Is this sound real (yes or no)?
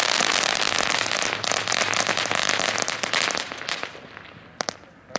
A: yes